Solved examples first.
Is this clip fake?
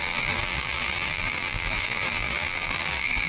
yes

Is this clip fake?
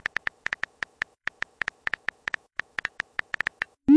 yes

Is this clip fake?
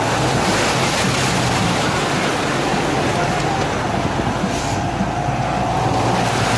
no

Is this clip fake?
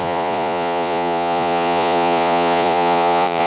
yes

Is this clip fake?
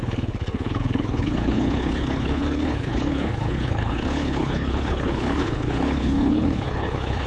yes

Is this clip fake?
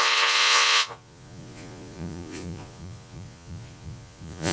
yes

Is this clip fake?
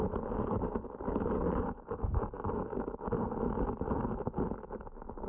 no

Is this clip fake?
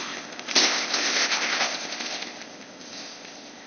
yes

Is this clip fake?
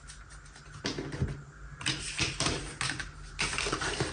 no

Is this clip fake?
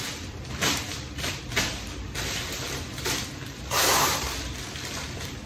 yes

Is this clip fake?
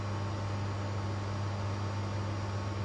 no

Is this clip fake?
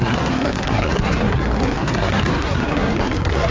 yes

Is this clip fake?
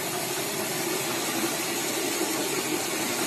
no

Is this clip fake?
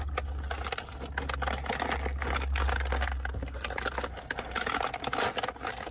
no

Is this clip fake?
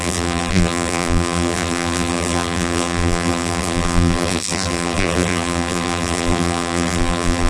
yes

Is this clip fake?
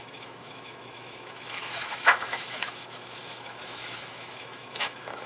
yes